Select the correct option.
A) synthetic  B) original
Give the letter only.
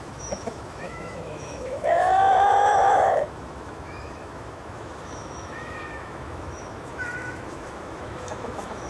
A